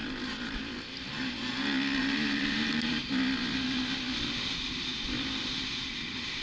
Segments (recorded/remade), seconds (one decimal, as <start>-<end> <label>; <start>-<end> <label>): 0.0-0.8 remade; 0.8-2.0 recorded; 2.0-2.9 remade; 2.9-6.4 recorded